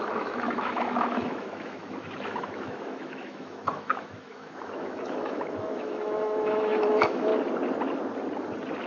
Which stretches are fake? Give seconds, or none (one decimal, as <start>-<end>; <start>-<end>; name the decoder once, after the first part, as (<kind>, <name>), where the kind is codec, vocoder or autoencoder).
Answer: 0.0-7.3 (autoencoder, DAC-VAE)